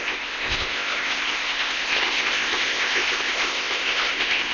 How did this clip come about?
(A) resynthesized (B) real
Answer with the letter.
A